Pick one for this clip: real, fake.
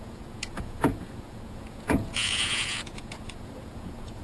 fake